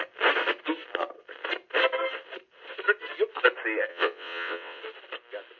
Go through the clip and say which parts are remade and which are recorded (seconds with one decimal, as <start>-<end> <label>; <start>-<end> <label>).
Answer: 0.0-3.9 recorded; 3.9-4.8 remade; 4.8-5.6 recorded